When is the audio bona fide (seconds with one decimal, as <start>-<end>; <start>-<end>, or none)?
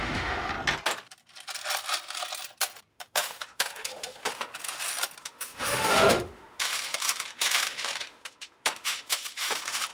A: 0.5-2.9; 4.5-5.2